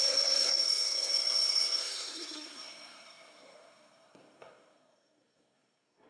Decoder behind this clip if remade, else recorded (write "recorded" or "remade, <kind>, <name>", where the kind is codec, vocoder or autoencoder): remade, codec, SNAC